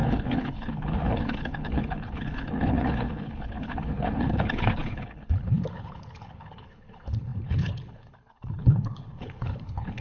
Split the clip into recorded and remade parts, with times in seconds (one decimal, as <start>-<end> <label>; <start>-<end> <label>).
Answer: 0.0-10.0 remade